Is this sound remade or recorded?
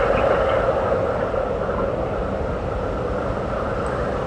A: recorded